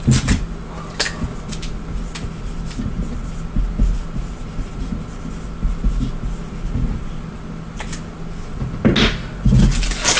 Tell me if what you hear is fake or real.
real